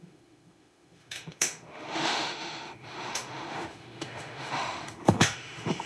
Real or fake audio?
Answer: fake